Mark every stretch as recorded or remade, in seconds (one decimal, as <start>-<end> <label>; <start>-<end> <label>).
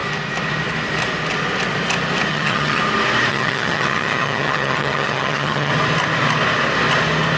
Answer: 0.0-2.3 recorded; 2.3-2.8 remade; 2.8-3.3 recorded; 3.3-5.7 remade; 5.7-7.4 recorded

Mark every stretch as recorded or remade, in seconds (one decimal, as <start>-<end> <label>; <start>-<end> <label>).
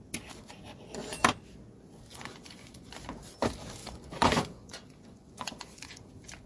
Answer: 0.0-2.1 recorded; 2.1-2.9 remade; 2.9-3.8 recorded; 3.8-6.1 remade; 6.1-6.5 recorded